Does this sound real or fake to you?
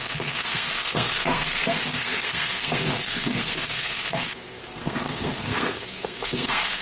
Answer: fake